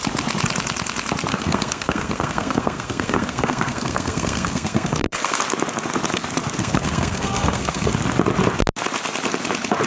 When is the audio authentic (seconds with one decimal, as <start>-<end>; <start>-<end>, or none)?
0.0-1.3; 5.4-6.6; 7.9-9.9